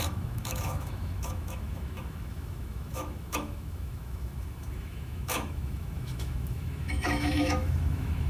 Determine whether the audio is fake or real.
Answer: fake